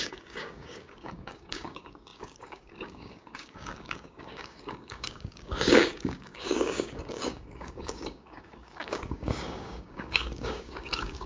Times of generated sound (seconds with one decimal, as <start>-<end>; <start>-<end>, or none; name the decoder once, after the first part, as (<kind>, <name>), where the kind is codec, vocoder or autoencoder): 0.0-11.3 (codec, DAC)